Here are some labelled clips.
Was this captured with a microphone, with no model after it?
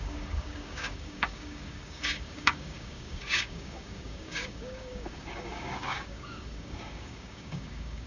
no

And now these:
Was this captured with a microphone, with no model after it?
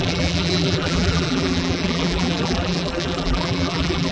no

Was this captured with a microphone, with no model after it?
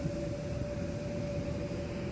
yes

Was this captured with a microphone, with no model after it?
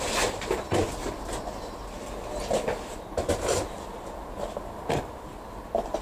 yes